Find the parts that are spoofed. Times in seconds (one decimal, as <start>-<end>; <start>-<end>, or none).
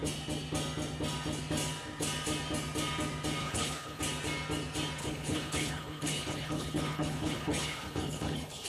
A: 3.4-4.0; 5.0-8.7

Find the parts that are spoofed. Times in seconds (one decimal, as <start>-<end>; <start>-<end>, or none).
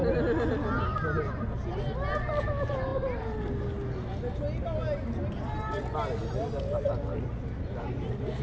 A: none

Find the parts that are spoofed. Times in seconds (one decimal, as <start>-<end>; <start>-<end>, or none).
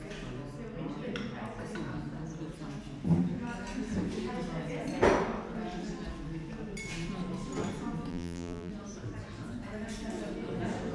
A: 8.1-8.7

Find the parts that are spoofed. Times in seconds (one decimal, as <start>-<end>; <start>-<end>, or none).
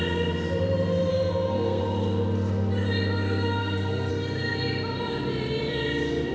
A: 1.1-1.8; 3.6-4.1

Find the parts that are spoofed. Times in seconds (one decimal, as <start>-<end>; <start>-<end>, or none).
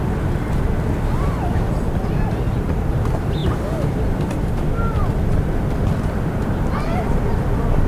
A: none